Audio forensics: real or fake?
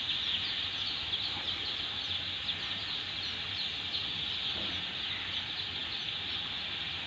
real